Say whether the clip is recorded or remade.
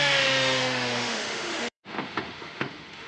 remade